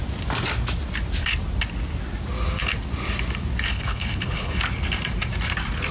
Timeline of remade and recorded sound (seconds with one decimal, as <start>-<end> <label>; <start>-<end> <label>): 0.0-3.7 recorded; 3.7-4.6 remade; 4.6-5.9 recorded